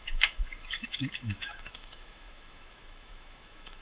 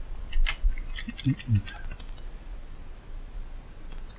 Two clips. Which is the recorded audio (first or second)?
second